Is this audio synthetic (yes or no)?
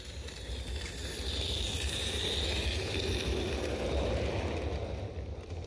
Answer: no